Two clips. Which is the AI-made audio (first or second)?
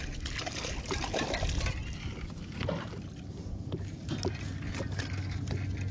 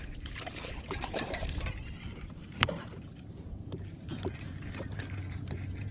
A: second